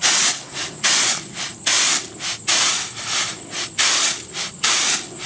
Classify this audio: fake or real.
real